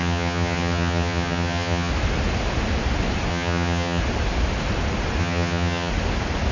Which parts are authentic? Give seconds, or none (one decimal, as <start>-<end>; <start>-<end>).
1.9-3.3; 4.0-5.2; 5.9-6.5